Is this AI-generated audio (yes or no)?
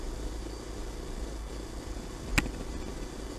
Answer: no